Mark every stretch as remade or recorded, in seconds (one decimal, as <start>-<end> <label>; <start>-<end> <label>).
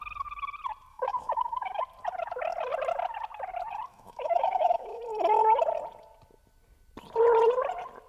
0.0-0.9 recorded; 0.9-1.8 remade; 1.8-3.9 recorded; 3.9-5.0 remade; 5.0-8.1 recorded